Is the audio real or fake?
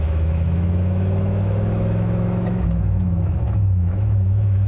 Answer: fake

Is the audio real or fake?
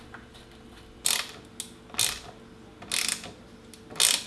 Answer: real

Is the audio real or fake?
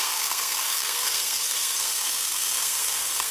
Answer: fake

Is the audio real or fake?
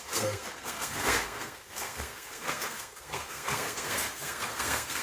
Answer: fake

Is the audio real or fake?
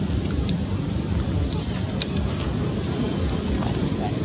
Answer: real